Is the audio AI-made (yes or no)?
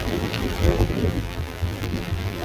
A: yes